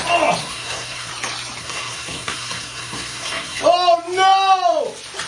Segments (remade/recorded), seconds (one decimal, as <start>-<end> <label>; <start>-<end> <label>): 0.0-0.4 recorded; 0.4-1.1 remade; 1.1-1.6 recorded; 1.6-3.6 remade; 3.6-5.3 recorded